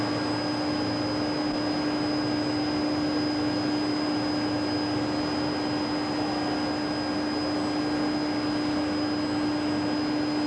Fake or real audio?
real